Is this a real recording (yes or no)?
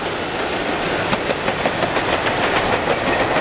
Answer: yes